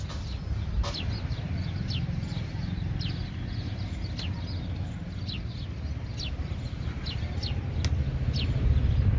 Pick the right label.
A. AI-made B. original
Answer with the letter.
B